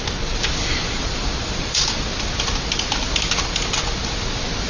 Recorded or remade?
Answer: recorded